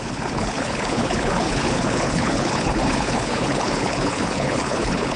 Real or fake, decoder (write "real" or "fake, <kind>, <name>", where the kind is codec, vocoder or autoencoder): fake, codec, HILCodec